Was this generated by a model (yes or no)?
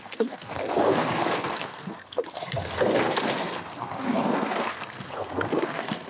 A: yes